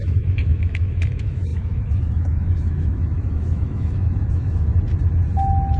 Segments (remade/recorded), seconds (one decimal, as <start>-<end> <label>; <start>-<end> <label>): 0.0-4.7 remade; 4.7-5.8 recorded